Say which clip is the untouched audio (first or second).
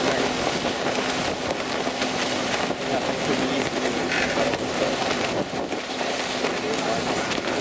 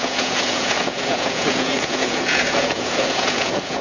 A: first